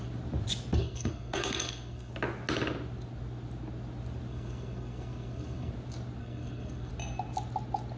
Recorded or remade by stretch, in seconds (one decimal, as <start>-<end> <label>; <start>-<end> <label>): 0.0-0.8 recorded; 0.8-2.1 remade; 2.1-4.3 recorded; 4.3-5.7 remade; 5.7-6.2 recorded; 6.2-6.9 remade; 6.9-8.0 recorded